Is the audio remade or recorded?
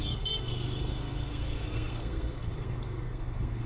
remade